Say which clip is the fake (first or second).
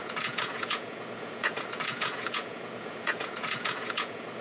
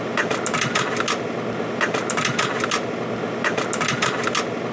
first